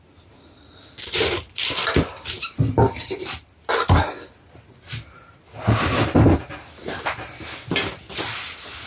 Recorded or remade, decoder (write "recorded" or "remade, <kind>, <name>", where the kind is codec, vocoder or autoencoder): recorded